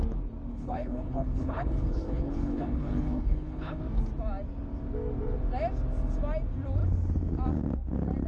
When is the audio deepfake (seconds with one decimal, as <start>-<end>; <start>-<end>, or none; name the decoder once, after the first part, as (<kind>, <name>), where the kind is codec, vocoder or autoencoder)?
0.5-3.8 (codec, HILCodec)